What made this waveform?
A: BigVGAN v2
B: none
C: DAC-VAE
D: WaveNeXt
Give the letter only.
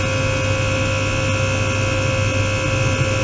B